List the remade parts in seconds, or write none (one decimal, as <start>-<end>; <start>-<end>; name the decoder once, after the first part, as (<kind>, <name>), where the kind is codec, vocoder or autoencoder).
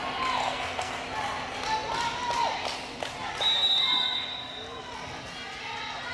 0.4-1.0 (codec, SNAC)